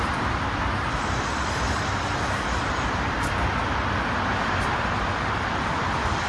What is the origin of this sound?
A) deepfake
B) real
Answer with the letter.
B